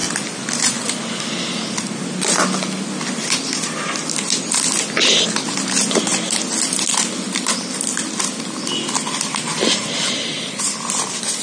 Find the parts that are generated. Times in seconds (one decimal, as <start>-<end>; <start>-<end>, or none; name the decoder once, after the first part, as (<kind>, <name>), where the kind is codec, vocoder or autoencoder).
none